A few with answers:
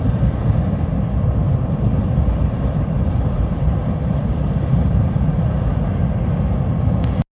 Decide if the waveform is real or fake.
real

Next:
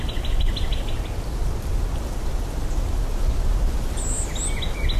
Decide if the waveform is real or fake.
real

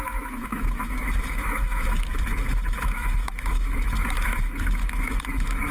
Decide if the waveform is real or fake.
fake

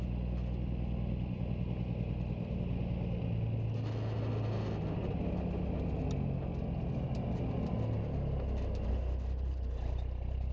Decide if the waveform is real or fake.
real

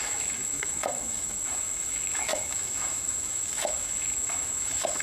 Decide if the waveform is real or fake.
fake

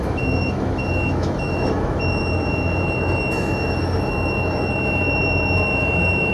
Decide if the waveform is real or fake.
fake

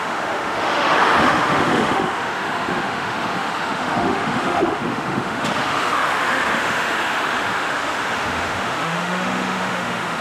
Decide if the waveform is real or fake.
fake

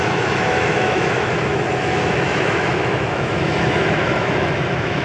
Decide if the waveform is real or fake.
fake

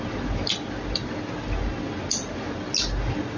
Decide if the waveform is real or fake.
real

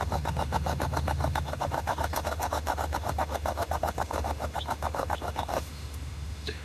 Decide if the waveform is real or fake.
fake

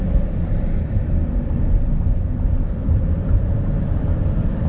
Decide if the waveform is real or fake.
real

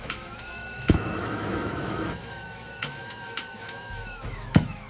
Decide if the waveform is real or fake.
fake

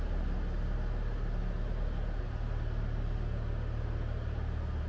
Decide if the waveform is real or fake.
real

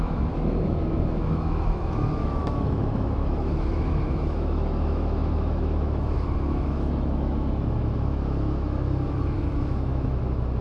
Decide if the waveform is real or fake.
fake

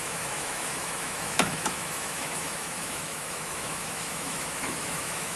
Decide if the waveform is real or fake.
fake